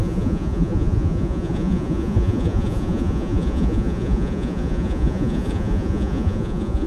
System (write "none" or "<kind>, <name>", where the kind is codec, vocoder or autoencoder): vocoder, Vocos